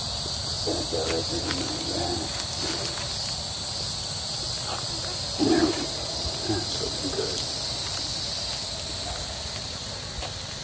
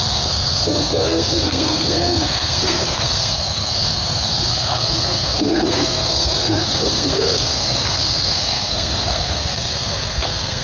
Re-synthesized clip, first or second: second